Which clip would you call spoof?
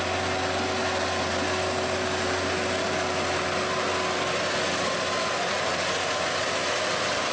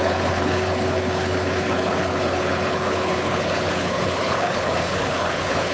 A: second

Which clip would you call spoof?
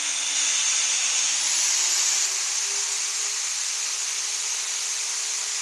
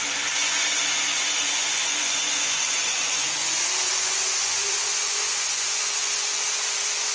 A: second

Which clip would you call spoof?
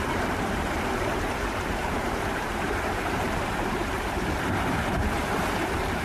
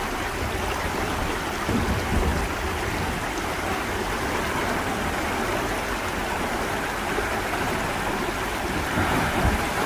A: first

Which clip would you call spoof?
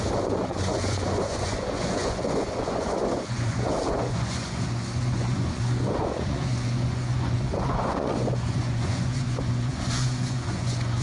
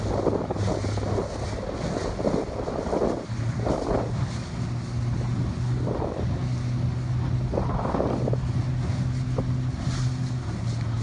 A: first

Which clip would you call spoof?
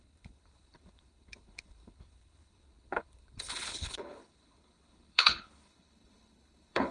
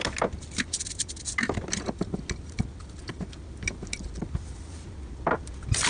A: first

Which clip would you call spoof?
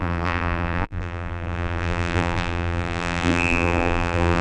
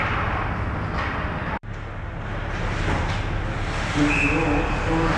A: first